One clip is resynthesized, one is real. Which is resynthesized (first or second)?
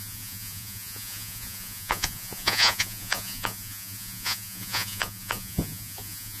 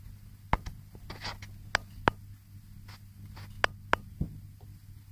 first